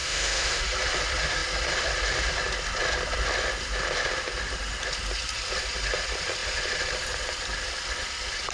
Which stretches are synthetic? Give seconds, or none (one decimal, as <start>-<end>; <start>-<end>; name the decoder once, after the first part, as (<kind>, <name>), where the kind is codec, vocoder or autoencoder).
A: 0.0-0.6 (autoencoder, DAC-VAE)